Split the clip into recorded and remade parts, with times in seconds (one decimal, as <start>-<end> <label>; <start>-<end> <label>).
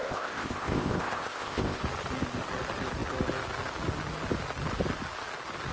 0.0-1.8 remade; 1.8-5.7 recorded